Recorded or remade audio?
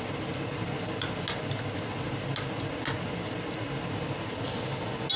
recorded